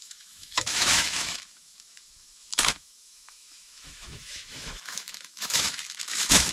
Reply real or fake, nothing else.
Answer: fake